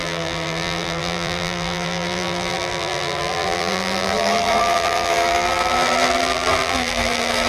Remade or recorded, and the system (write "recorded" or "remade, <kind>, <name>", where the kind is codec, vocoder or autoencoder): remade, vocoder, BigVGAN v2